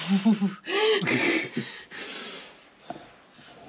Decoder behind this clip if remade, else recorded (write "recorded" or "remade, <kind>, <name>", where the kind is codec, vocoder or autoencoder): recorded